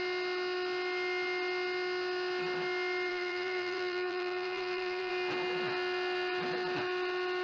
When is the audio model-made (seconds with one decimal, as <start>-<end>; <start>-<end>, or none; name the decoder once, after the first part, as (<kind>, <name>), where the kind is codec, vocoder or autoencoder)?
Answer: 3.1-5.1 (vocoder, BigVGAN v2)